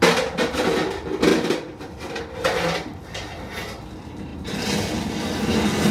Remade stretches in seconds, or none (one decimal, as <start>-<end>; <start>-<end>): 1.3-2.2; 2.9-3.6